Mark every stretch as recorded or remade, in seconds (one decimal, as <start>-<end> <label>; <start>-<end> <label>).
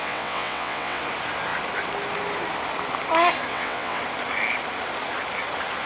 0.0-1.0 remade; 1.0-3.5 recorded; 3.5-4.0 remade; 4.0-5.9 recorded